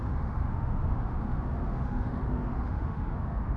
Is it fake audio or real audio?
fake